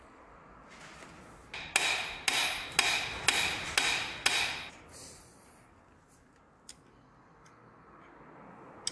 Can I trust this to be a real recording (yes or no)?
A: yes